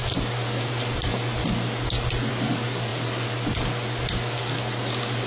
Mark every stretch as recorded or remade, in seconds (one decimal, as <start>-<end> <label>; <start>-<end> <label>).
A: 0.0-5.3 recorded